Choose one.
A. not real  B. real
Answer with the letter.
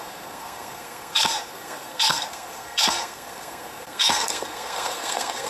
A